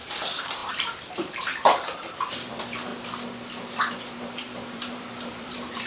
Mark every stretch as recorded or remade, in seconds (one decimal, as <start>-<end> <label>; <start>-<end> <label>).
0.0-2.9 remade; 2.9-4.1 recorded; 4.1-5.9 remade